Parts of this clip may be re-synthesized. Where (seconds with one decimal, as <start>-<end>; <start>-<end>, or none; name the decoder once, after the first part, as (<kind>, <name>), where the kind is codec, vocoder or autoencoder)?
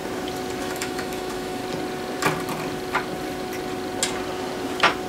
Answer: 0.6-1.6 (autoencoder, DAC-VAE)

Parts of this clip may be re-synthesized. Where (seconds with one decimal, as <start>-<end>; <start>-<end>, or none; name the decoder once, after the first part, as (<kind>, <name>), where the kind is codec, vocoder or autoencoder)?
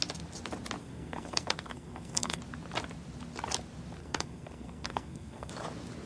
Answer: 0.8-2.4 (codec, SNAC); 4.0-5.5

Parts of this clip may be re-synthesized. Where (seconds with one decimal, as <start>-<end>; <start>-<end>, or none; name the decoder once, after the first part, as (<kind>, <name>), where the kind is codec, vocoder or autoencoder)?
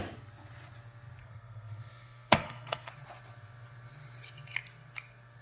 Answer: 1.2-2.9 (codec, SNAC)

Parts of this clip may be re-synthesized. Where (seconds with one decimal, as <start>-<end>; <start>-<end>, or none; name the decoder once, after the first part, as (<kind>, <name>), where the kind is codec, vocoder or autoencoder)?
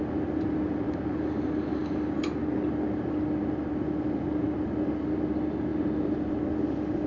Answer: none